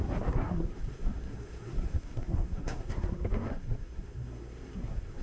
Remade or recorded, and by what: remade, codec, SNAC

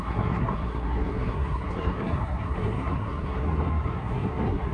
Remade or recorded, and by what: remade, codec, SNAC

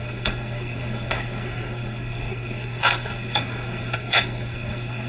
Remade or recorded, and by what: remade, codec, SNAC